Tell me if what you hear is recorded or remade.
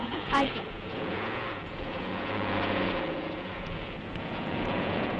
remade